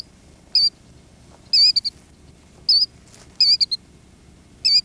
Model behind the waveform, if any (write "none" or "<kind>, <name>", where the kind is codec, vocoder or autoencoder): none